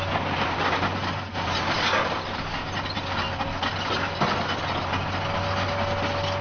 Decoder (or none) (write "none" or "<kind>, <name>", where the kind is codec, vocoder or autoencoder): none